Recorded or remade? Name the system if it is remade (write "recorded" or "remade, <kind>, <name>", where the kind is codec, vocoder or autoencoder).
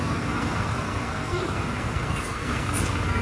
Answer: remade, codec, SNAC